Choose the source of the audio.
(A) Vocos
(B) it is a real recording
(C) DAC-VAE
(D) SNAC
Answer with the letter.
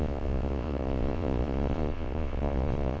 A